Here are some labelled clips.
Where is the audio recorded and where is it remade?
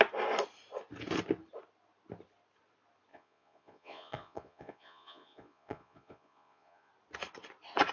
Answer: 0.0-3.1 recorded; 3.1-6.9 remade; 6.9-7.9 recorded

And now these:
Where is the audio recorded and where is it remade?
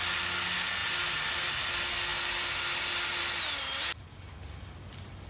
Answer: 0.0-5.3 recorded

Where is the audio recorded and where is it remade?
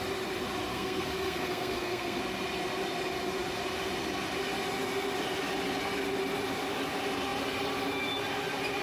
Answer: 0.0-0.7 recorded; 0.7-2.2 remade; 2.2-8.8 recorded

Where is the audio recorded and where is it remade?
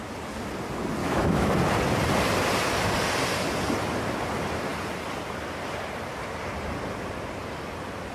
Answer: 0.0-1.0 recorded; 1.0-1.5 remade; 1.5-8.1 recorded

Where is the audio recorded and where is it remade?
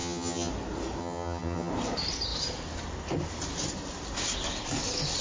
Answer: 0.0-0.5 remade; 0.5-1.0 recorded; 1.0-1.7 remade; 1.7-5.2 recorded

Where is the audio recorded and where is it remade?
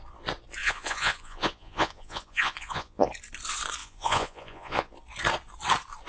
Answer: 0.0-0.6 recorded; 0.6-3.1 remade; 3.1-3.8 recorded; 3.8-4.9 remade; 4.9-6.1 recorded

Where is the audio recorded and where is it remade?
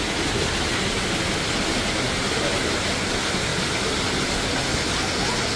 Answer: 0.0-5.6 recorded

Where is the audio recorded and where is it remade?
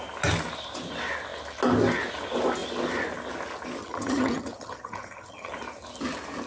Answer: 0.0-3.8 recorded; 3.8-5.5 remade; 5.5-6.5 recorded